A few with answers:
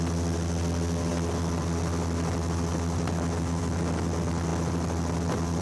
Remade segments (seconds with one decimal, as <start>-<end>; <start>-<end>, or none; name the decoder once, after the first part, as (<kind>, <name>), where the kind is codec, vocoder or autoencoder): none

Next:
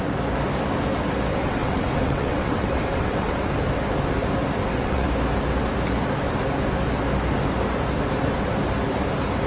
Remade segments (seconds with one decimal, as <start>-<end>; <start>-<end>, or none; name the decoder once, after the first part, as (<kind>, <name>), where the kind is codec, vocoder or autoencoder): 1.3-3.5 (vocoder, WaveNeXt); 4.6-5.1

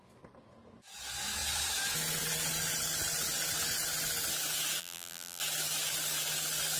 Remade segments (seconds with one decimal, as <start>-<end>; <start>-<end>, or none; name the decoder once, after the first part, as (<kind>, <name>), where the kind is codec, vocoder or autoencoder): 4.8-5.4 (vocoder, BigVGAN v2)